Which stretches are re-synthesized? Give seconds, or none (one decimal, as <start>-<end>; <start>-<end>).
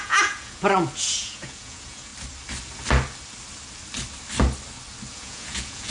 0.0-2.1; 5.1-5.9